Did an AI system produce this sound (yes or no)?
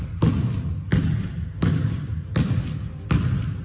no